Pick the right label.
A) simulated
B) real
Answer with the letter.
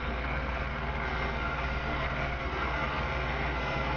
A